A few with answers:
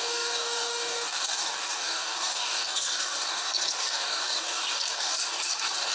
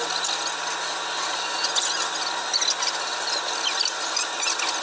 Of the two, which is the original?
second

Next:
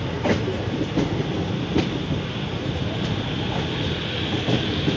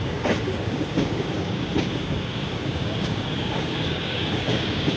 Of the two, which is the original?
first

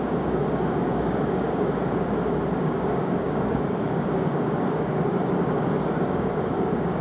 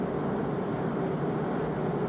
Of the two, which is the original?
second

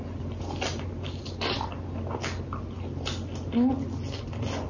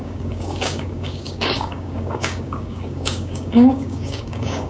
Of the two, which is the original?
first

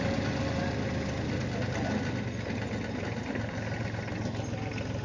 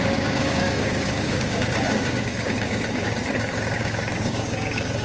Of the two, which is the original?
first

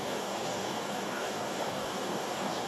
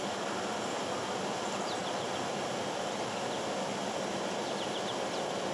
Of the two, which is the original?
second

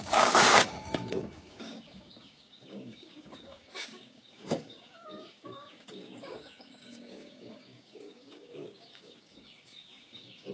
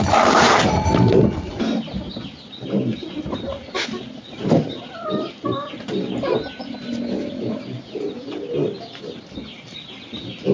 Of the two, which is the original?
second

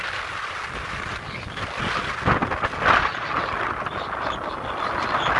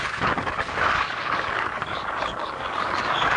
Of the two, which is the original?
first